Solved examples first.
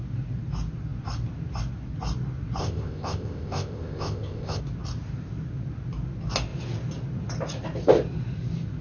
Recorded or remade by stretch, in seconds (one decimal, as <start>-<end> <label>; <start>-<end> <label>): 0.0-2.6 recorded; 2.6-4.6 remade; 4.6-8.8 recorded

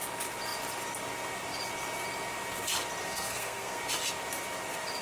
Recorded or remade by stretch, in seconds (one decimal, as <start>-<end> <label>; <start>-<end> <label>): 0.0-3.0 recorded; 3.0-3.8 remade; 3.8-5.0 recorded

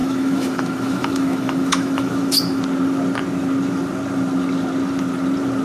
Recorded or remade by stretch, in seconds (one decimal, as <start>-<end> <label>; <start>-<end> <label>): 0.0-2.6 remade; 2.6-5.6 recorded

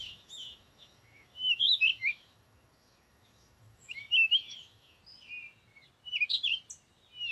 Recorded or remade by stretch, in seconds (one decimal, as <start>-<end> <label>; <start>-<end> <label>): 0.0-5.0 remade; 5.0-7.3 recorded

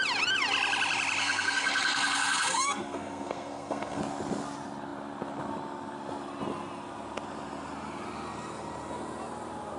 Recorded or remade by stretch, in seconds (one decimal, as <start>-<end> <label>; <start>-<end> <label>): 0.0-1.2 recorded; 1.2-4.0 remade; 4.0-9.8 recorded

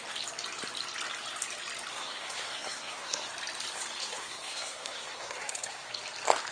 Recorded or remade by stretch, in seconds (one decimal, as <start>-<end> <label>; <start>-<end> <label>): 0.0-1.9 recorded; 1.9-3.3 remade; 3.3-4.0 recorded; 4.0-5.9 remade; 5.9-6.5 recorded

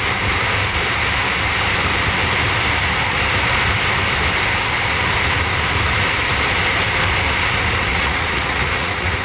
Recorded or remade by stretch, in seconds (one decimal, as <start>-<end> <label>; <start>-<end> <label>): 0.0-7.9 recorded; 7.9-9.2 remade

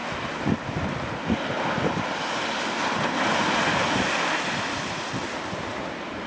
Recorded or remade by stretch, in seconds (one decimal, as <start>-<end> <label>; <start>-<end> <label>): 0.0-6.3 recorded